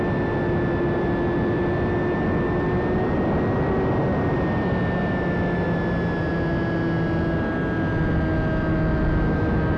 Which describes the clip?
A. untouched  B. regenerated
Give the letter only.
A